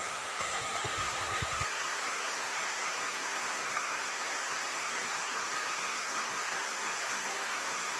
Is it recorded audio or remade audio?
remade